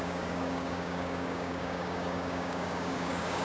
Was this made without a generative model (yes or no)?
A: no